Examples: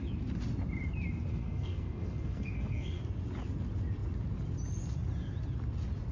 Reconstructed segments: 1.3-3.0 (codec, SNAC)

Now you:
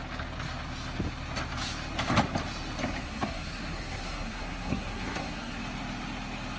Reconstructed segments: 3.0-5.6 (codec, SNAC)

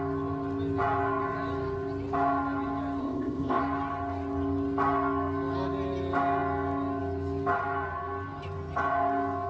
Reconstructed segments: 3.0-3.6 (codec, ZipCodec)